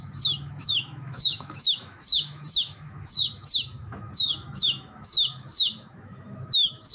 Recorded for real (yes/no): no